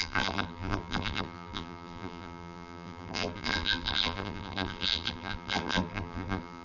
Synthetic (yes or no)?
yes